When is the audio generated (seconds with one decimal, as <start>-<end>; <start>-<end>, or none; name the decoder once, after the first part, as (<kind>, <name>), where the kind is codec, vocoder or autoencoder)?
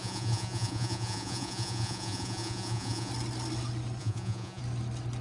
0.0-3.1 (vocoder, Vocos); 4.0-4.6